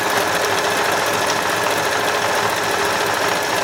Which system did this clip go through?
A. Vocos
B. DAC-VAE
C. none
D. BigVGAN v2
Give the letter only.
C